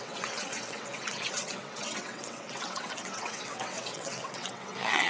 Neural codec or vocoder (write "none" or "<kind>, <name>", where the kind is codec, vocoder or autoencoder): vocoder, WaveNeXt